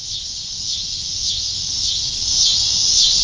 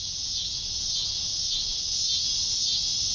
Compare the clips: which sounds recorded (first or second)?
second